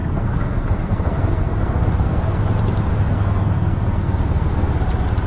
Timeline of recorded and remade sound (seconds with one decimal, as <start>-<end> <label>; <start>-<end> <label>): 0.0-2.4 remade; 2.4-2.9 recorded; 2.9-4.7 remade; 4.7-5.3 recorded